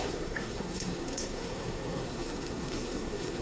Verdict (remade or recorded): remade